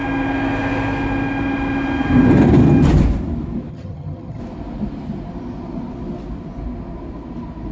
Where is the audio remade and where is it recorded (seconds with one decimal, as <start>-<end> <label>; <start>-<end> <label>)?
0.0-3.7 recorded; 3.7-4.4 remade; 4.4-7.7 recorded